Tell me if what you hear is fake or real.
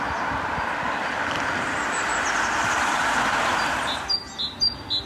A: fake